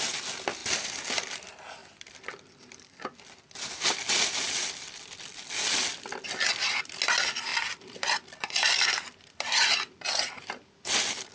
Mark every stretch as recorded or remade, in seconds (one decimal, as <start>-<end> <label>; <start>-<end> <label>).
0.0-0.6 recorded; 0.6-1.1 remade; 1.1-1.8 recorded; 1.8-5.2 remade; 5.2-7.5 recorded; 7.5-10.0 remade; 10.0-11.3 recorded